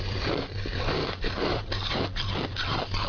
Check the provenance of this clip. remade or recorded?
remade